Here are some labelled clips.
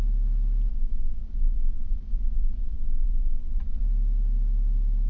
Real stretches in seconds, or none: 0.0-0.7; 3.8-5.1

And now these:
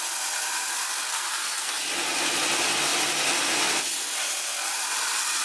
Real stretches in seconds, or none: 0.0-1.1; 1.7-5.4